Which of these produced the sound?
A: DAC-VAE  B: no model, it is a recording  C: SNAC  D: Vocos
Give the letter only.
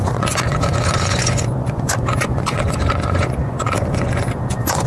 D